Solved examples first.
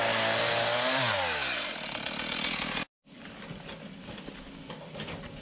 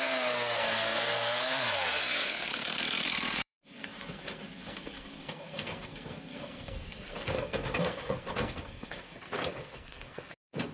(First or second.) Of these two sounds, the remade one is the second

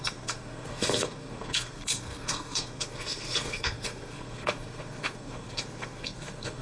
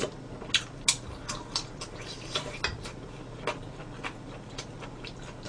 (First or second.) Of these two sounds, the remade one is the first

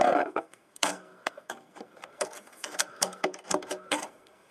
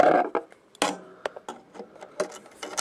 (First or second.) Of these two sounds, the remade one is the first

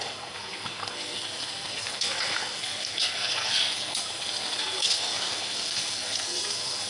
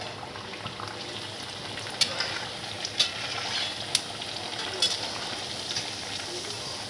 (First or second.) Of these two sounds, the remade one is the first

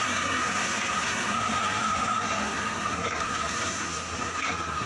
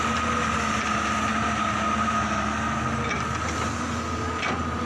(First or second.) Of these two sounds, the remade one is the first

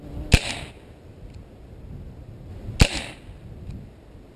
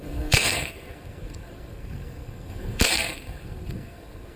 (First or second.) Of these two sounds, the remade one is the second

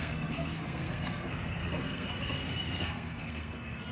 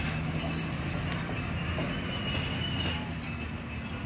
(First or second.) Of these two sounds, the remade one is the first